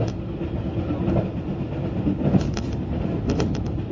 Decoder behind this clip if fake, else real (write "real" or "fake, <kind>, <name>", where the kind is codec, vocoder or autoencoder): real